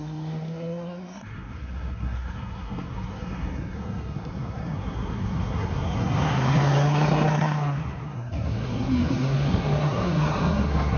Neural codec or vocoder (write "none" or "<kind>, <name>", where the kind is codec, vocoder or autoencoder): codec, SNAC